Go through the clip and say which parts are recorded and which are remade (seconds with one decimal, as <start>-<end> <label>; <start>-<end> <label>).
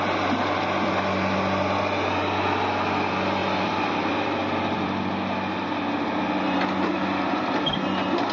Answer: 0.0-3.4 recorded; 3.4-5.0 remade; 5.0-8.3 recorded